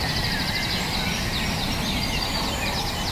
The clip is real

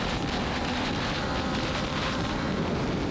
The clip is real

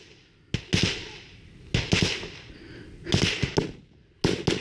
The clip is real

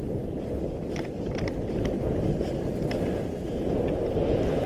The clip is real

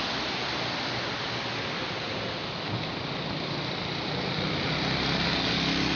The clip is real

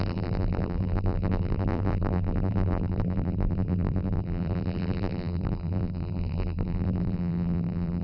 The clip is fake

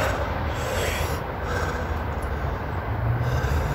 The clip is real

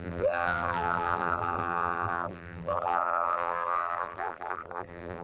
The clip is fake